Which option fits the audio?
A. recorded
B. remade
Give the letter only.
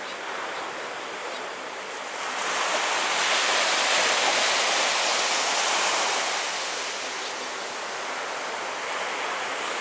A